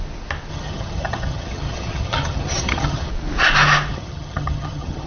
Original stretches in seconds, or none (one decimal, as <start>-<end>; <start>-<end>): 0.0-0.5; 3.1-3.9